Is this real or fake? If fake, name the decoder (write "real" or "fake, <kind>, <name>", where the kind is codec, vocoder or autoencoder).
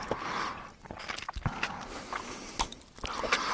real